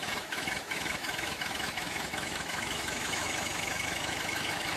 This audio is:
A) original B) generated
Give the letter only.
B